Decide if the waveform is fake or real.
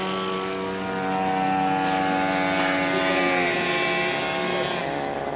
real